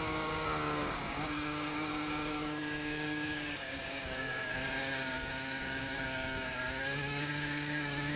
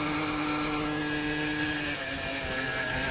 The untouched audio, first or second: second